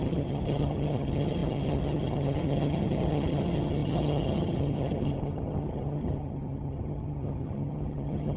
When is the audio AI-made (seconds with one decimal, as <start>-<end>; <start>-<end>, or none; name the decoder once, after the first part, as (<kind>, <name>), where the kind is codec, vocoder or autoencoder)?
0.0-8.4 (vocoder, HiFi-GAN)